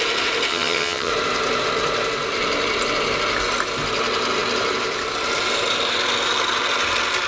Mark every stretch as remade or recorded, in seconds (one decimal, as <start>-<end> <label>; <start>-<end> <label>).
0.0-0.5 recorded; 0.5-1.1 remade; 1.1-7.3 recorded